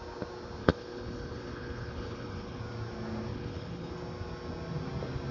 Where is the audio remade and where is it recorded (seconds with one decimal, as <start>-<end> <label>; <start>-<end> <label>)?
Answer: 0.0-0.6 recorded; 0.6-2.6 remade; 2.6-3.3 recorded; 3.3-3.9 remade; 3.9-5.3 recorded